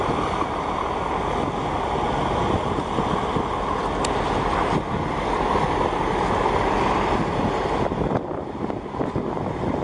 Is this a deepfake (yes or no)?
no